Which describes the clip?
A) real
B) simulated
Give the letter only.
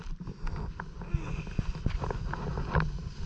A